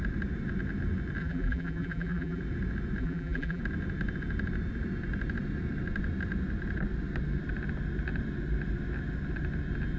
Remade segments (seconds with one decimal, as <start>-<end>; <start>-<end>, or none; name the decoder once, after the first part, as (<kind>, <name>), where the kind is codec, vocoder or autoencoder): 1.2-2.4 (vocoder, BigVGAN v2); 3.0-3.6